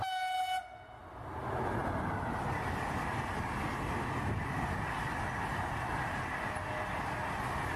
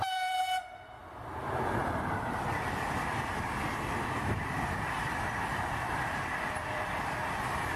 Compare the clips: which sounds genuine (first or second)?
first